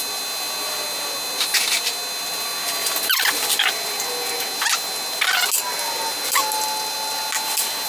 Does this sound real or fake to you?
real